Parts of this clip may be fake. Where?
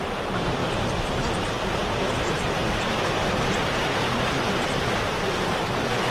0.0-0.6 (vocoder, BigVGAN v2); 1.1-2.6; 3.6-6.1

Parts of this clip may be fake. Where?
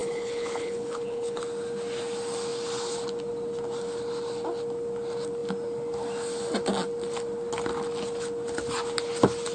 0.0-1.4 (codec, HILCodec)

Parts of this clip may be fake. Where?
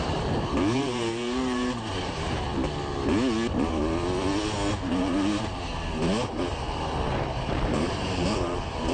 0.0-2.5 (vocoder, BigVGAN v2); 5.0-5.7; 6.5-8.9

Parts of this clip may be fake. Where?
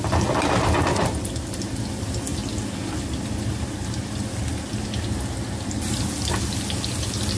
none